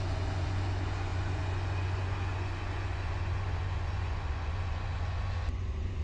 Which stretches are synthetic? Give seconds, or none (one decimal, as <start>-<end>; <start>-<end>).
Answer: 0.0-6.0